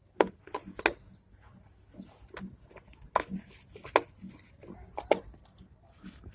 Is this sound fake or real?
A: real